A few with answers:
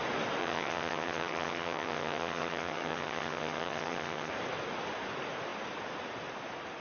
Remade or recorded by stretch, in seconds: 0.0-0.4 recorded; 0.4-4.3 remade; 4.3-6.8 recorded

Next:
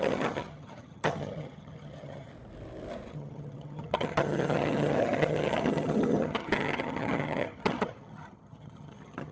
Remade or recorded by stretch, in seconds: 0.0-2.3 remade; 2.3-3.1 recorded; 3.1-9.3 remade

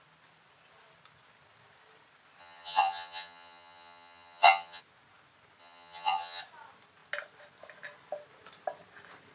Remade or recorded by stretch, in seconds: 0.0-2.4 recorded; 2.4-4.8 remade; 4.8-5.6 recorded; 5.6-6.4 remade; 6.4-9.3 recorded

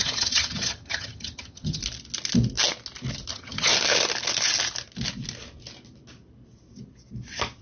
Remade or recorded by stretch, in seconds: 0.0-1.8 remade; 1.8-3.3 recorded; 3.3-3.7 remade; 3.7-7.6 recorded